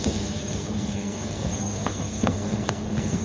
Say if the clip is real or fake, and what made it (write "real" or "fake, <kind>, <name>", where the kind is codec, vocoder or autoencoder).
fake, codec, SNAC